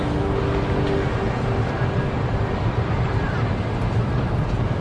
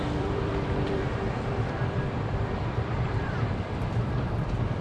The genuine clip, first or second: first